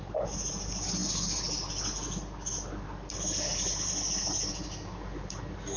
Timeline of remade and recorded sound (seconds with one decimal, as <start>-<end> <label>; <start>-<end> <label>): 0.0-5.8 recorded